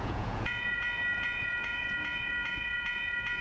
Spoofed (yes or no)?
yes